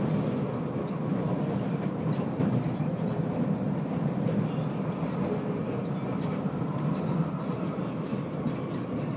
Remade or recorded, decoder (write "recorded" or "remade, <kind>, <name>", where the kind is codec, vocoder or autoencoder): recorded